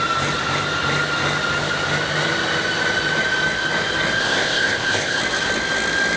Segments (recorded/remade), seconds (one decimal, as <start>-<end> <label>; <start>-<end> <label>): 0.0-4.2 recorded; 4.2-5.2 remade; 5.2-6.2 recorded